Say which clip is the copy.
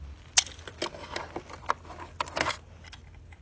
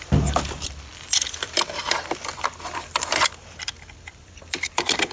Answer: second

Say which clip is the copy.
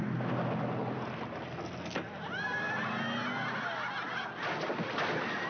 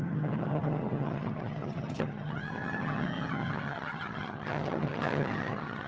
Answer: second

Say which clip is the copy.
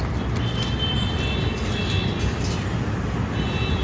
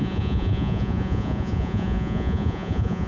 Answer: second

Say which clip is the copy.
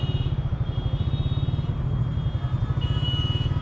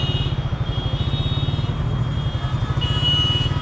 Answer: first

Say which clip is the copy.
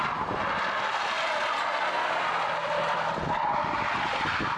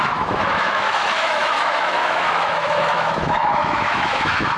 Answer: second